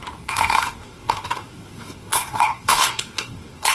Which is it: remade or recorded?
remade